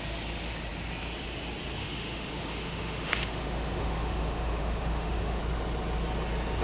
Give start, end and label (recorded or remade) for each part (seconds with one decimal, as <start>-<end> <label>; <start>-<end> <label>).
0.0-1.8 recorded; 1.8-5.4 remade; 5.4-6.6 recorded